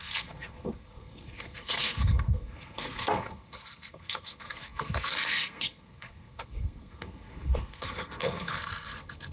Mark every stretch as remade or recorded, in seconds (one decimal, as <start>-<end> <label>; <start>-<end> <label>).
0.0-9.3 remade